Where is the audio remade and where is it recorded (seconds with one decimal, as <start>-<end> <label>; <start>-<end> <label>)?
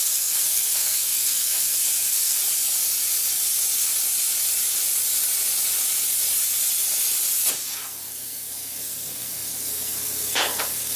0.0-2.4 remade; 2.4-7.6 recorded; 7.6-11.0 remade